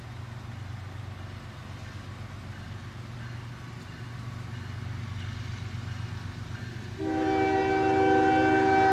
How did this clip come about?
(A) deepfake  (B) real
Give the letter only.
B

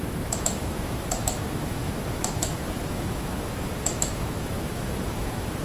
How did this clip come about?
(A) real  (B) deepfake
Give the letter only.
B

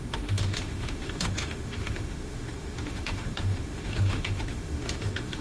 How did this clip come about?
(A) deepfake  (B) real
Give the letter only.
A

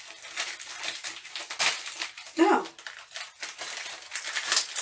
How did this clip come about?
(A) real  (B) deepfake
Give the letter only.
A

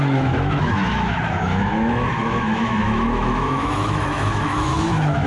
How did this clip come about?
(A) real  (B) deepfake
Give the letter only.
B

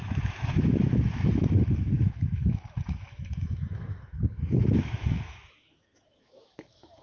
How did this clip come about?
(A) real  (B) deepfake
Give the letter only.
B